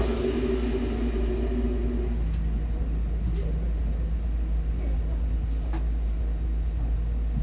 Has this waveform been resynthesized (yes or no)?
no